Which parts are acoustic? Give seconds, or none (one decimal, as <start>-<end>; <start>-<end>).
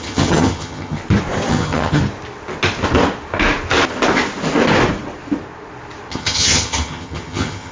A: 1.0-1.5; 2.0-6.1